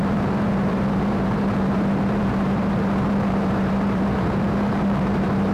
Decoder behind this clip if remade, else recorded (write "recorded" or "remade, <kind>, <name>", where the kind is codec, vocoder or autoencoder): remade, vocoder, BigVGAN v2